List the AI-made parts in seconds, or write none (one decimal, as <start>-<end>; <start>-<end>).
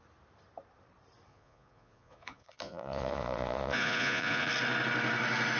1.3-4.5